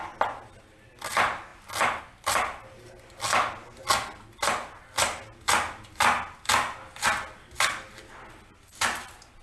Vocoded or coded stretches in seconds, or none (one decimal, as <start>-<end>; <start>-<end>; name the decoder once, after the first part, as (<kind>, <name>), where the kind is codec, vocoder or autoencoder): none